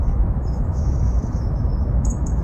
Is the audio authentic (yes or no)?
no